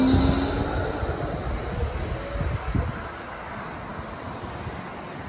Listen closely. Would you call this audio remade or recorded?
recorded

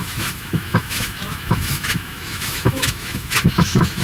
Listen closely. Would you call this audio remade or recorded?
remade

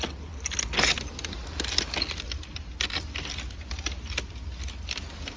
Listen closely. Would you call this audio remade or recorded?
recorded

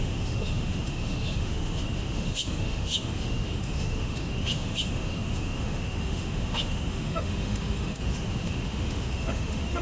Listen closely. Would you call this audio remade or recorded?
remade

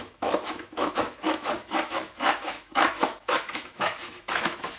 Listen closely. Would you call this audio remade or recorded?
remade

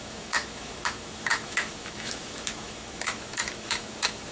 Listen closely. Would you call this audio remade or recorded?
remade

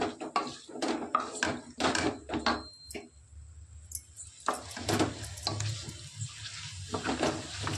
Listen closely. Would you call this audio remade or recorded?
recorded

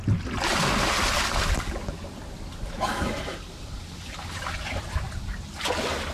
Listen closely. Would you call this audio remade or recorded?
recorded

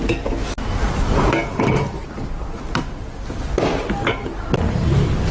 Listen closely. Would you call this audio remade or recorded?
recorded